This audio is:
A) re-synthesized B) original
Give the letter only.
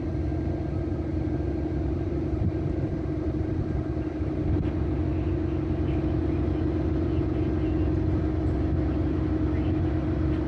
B